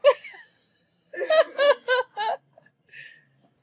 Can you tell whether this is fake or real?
real